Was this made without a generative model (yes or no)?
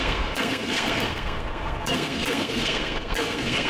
no